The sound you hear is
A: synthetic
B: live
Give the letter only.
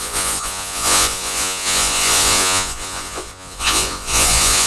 A